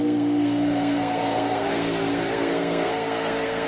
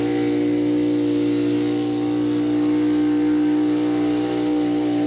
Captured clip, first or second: second